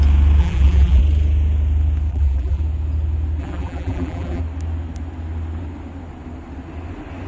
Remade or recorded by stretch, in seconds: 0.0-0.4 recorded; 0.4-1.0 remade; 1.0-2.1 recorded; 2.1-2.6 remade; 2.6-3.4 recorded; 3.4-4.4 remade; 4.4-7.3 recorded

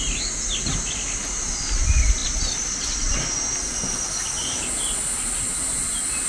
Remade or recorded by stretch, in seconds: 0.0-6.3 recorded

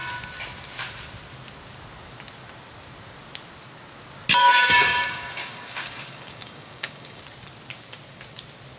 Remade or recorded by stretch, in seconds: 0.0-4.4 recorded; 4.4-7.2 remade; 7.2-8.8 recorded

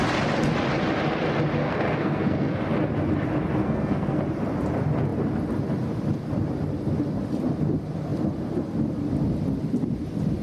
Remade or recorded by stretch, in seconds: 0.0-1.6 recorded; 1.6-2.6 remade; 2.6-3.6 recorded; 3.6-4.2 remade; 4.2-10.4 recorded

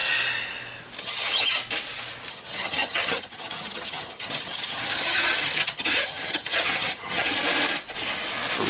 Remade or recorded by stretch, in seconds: 0.0-1.0 recorded; 1.0-1.6 remade; 1.6-2.3 recorded; 2.3-7.4 remade; 7.4-8.7 recorded

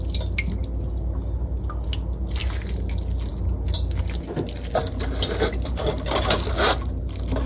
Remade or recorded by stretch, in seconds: 0.0-7.5 recorded

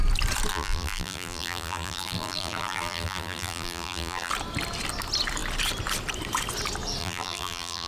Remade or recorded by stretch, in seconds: 0.0-0.5 recorded; 0.5-4.3 remade; 4.3-7.0 recorded; 7.0-7.9 remade